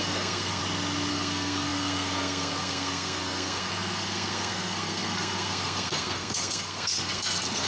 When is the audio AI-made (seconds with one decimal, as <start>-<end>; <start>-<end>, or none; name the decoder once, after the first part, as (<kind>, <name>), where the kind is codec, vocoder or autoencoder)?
0.0-0.6 (codec, SNAC); 1.1-7.7